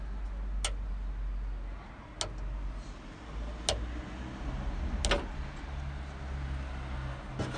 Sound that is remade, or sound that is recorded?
recorded